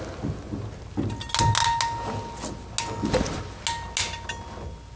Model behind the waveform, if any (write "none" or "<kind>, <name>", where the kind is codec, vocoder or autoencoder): none